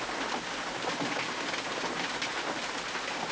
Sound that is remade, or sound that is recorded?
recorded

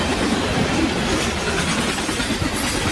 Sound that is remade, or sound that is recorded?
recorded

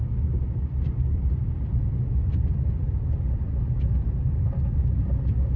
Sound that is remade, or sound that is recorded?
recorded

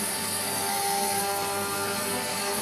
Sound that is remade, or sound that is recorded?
remade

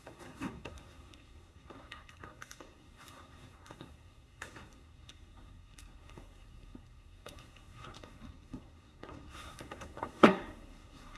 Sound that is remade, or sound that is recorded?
remade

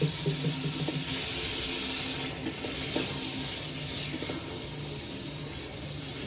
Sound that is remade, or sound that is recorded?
recorded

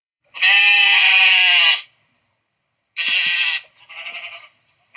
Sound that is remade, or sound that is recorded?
remade